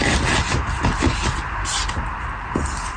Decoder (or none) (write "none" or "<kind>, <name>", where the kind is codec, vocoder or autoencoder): none